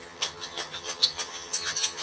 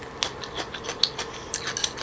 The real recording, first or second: second